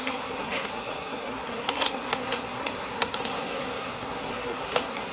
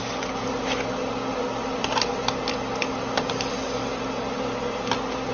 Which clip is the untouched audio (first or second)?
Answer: second